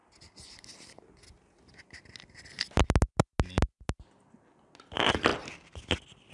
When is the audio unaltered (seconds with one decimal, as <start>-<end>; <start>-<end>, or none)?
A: 0.0-6.3